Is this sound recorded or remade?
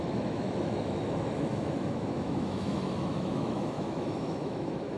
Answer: remade